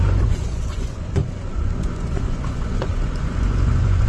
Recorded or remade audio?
remade